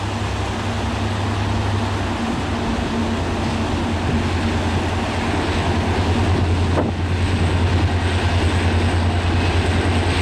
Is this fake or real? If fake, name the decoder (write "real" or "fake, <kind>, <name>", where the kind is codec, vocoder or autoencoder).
real